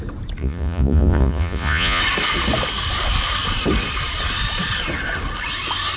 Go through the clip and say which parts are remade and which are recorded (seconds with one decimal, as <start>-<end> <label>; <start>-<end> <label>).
0.0-0.4 recorded; 0.4-2.0 remade; 2.0-6.0 recorded